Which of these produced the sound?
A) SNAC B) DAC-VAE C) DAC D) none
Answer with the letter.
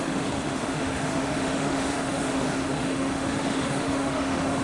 B